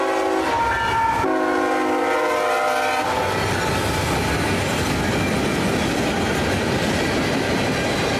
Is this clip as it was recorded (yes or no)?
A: yes